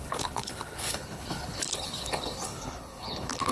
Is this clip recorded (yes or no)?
no